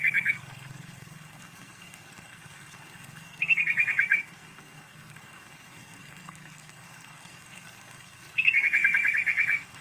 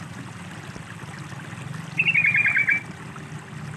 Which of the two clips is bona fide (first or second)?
second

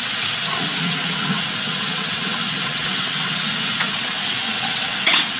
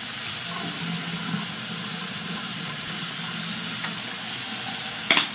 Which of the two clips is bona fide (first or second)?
second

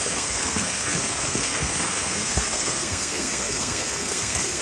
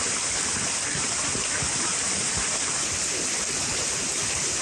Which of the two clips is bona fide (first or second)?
second